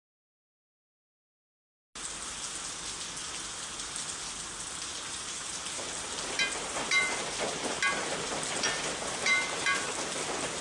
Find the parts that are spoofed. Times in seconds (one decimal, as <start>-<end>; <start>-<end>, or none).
4.9-9.9